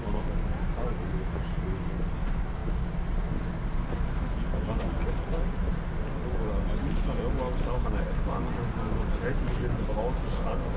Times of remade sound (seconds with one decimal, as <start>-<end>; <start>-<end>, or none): none